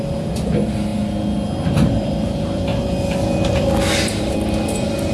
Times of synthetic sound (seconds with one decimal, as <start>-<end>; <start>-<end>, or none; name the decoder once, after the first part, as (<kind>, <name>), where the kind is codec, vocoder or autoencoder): 0.0-0.9 (vocoder, BigVGAN v2); 1.7-2.7; 3.6-5.1